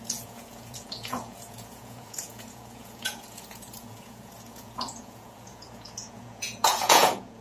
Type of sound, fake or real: fake